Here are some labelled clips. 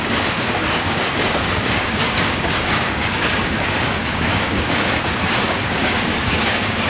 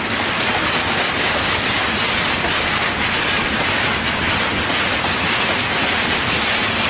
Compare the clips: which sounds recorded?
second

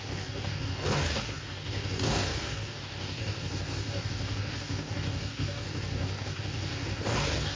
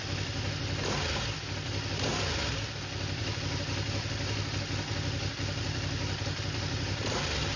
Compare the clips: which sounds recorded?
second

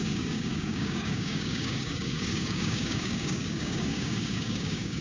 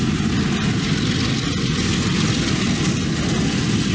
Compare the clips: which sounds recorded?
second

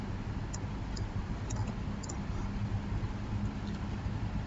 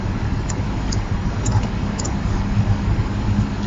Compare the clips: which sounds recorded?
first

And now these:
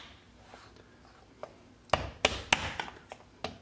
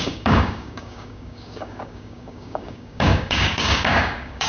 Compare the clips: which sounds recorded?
first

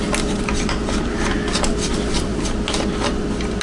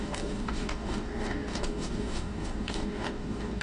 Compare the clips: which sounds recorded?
first